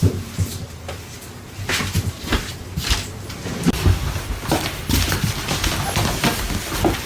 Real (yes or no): yes